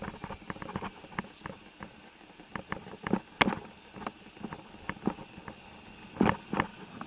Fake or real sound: real